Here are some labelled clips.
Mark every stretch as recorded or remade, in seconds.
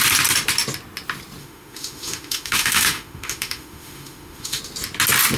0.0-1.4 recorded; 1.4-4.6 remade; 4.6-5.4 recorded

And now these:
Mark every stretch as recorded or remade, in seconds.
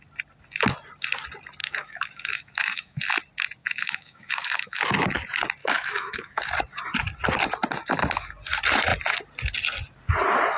0.0-1.6 recorded; 1.6-3.0 remade; 3.0-3.6 recorded; 3.6-4.8 remade; 4.8-5.6 recorded; 5.6-6.4 remade; 6.4-10.6 recorded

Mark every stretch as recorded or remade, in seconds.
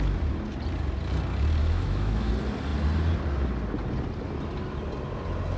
0.0-1.6 recorded; 1.6-2.3 remade; 2.3-5.6 recorded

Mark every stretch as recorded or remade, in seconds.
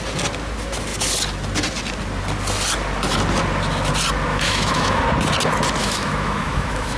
0.0-4.3 recorded; 4.3-5.0 remade; 5.0-5.8 recorded; 5.8-7.0 remade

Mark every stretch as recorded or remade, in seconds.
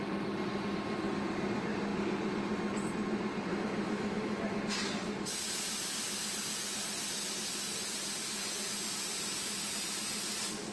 0.0-3.5 recorded; 3.5-4.6 remade; 4.6-10.7 recorded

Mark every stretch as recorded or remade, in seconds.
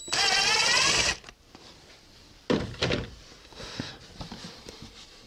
0.0-3.4 recorded; 3.4-3.9 remade; 3.9-5.3 recorded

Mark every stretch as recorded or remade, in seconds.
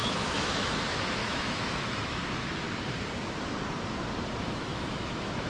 0.0-2.2 remade; 2.2-4.4 recorded; 4.4-5.5 remade